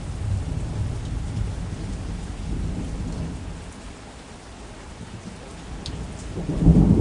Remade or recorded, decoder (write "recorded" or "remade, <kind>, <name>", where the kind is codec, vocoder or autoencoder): recorded